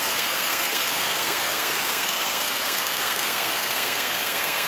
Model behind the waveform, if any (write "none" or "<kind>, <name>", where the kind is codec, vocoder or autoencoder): codec, SNAC